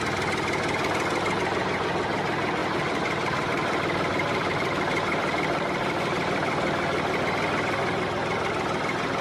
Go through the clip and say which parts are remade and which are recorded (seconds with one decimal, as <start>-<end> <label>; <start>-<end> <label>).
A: 0.0-2.6 recorded; 2.6-7.2 remade; 7.2-9.2 recorded